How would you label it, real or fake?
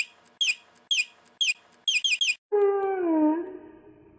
real